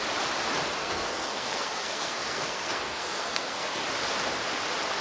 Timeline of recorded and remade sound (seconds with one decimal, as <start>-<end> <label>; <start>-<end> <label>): 0.0-0.8 recorded; 0.8-3.8 remade; 3.8-5.0 recorded